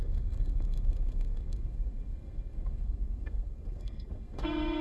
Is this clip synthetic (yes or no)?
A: yes